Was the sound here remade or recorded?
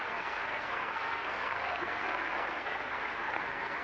remade